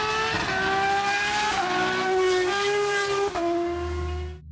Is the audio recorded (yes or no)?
yes